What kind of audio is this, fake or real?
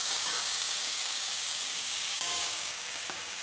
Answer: fake